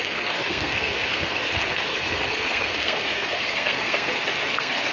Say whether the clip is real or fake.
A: fake